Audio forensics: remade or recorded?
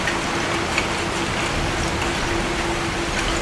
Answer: recorded